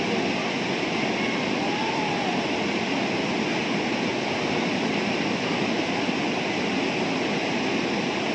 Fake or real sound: real